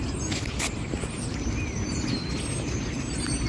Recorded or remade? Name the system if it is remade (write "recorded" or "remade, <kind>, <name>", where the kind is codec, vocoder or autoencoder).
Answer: recorded